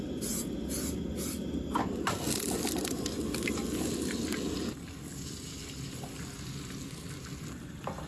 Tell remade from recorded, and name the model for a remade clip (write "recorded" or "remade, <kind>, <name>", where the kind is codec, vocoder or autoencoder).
recorded